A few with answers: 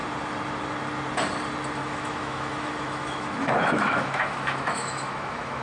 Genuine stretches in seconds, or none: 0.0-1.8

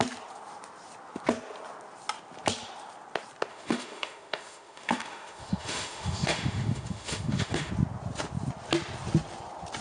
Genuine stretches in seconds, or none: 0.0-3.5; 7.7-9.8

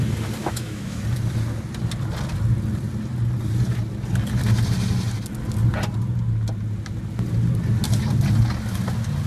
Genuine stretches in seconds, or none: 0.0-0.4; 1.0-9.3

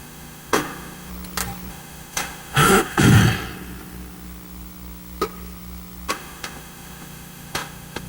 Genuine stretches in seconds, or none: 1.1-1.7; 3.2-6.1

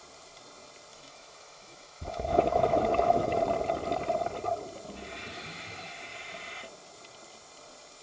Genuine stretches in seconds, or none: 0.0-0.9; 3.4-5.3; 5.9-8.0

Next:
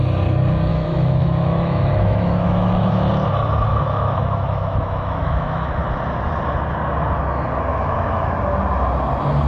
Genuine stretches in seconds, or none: 0.0-0.7; 3.1-3.7; 5.8-7.7; 8.3-9.5